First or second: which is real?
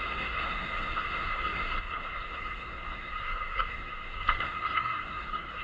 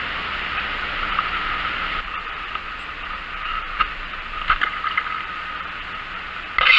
second